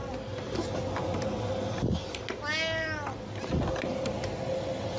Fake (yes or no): no